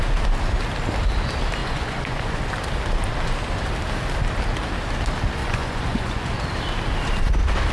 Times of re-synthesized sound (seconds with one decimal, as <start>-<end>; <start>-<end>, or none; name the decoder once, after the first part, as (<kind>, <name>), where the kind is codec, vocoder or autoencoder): 1.6-2.4 (vocoder, Vocos); 5.4-6.3

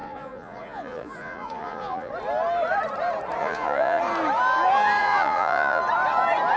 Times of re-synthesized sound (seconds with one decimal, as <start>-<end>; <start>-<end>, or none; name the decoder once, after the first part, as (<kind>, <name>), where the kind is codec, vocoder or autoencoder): 0.0-2.1 (vocoder, Vocos); 3.4-4.0; 5.0-5.8

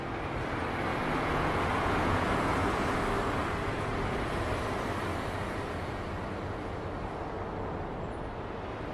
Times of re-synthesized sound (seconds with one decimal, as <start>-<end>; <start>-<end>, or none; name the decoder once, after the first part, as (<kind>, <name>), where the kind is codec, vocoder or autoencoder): 0.9-3.0 (vocoder, Vocos); 3.4-4.5; 5.1-6.2

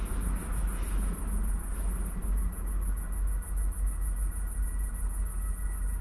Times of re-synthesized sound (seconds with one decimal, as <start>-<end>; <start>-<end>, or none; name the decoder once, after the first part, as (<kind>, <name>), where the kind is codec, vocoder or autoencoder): none

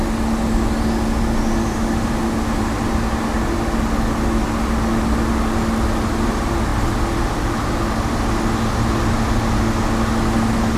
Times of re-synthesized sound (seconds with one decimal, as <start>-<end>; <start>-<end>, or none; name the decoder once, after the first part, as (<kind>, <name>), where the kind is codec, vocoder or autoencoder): none

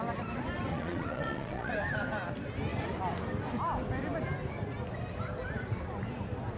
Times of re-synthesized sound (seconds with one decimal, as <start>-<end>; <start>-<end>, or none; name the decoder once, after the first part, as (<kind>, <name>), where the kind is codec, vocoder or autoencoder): 0.7-1.7 (vocoder, Vocos)